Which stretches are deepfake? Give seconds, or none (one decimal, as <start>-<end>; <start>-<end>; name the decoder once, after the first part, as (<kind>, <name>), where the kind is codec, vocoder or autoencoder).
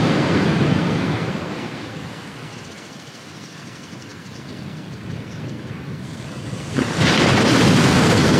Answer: 0.0-6.8 (codec, SNAC); 7.8-8.4